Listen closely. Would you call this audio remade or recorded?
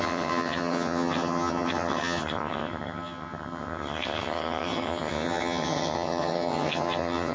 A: remade